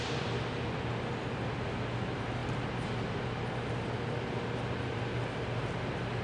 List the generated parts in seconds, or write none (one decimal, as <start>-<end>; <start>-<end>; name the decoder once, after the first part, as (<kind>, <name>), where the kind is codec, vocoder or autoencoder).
none